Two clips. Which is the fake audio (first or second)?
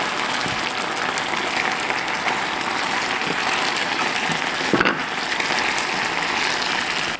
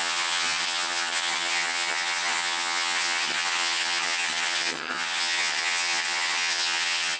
second